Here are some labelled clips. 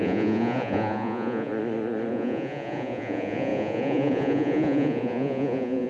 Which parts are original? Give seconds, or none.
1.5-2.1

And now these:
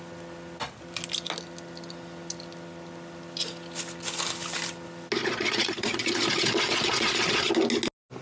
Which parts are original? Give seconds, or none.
0.0-5.2; 7.5-8.2